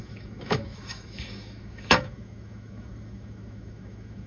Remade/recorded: remade